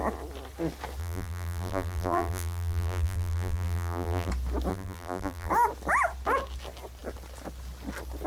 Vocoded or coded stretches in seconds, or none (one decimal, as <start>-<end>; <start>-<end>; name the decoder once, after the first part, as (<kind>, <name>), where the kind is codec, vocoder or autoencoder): 1.0-4.3 (vocoder, BigVGAN v2); 4.7-5.5